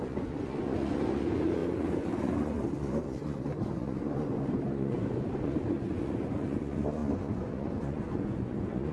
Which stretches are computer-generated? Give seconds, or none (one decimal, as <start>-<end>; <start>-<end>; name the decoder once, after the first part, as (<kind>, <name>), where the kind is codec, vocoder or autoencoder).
0.0-8.9 (vocoder, Vocos)